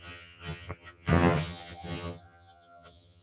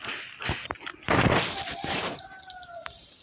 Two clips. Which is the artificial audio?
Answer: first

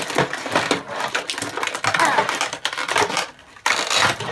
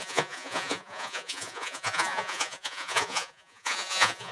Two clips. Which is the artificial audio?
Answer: second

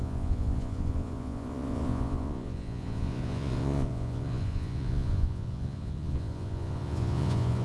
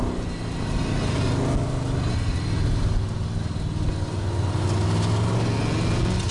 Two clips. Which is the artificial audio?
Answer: first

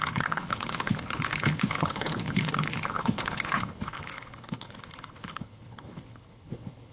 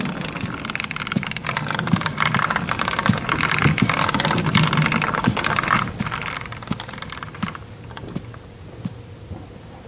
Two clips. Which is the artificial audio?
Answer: first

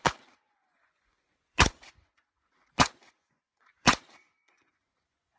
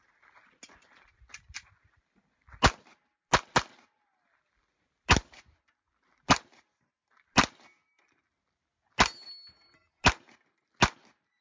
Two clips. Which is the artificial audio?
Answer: first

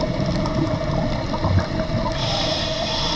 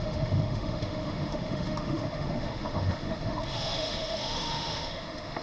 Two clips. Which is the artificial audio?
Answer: second